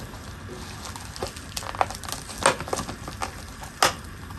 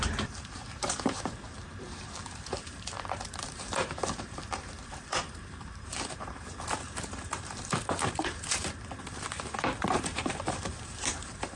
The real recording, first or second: first